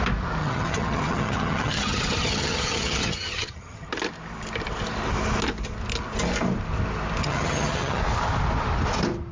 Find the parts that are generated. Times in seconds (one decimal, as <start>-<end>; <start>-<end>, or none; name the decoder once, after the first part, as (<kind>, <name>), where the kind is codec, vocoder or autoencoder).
0.4-3.9 (vocoder, HiFi-GAN); 7.2-8.0